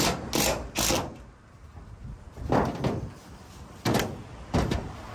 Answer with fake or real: real